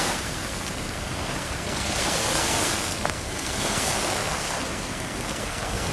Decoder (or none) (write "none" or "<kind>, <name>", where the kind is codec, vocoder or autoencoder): codec, SNAC